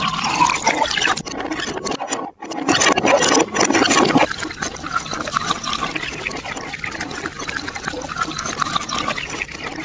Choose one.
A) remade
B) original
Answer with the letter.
B